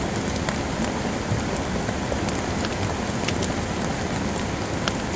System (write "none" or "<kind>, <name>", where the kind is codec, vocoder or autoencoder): none